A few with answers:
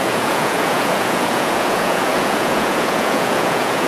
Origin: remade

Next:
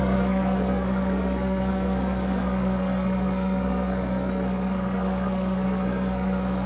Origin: remade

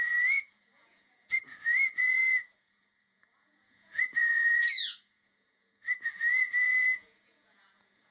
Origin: remade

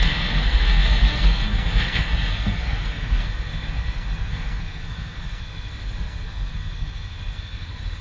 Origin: remade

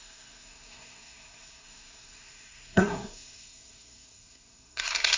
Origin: remade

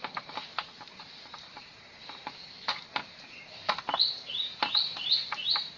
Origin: remade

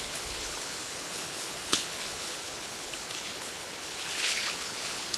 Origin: remade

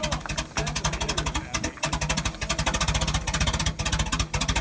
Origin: recorded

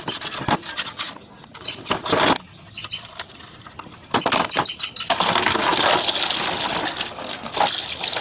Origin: recorded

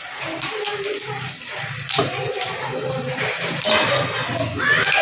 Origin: recorded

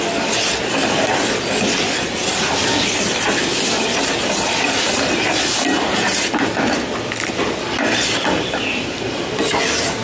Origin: recorded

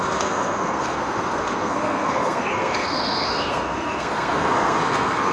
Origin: remade